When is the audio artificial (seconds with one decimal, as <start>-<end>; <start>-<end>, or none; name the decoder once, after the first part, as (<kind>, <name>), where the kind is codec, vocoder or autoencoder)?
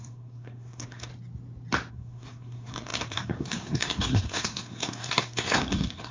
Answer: 0.0-1.1 (codec, SNAC); 1.9-6.1